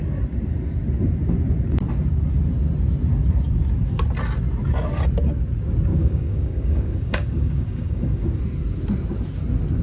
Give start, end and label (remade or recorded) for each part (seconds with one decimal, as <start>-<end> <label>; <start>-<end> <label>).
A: 0.0-5.9 recorded; 5.9-8.4 remade; 8.4-9.8 recorded